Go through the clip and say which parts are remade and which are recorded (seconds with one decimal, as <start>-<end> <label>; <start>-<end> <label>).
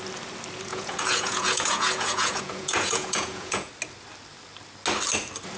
0.0-0.7 recorded; 0.7-3.7 remade; 3.7-5.6 recorded